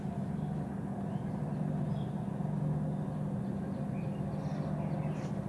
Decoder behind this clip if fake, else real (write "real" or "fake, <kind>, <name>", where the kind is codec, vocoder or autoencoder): real